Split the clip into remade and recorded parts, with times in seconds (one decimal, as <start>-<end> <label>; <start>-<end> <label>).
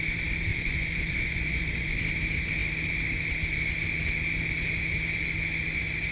0.0-0.5 recorded; 0.5-2.0 remade; 2.0-6.1 recorded